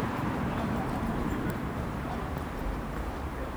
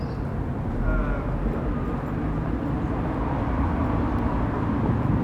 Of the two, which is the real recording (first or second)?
second